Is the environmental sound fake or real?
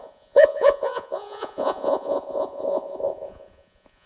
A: fake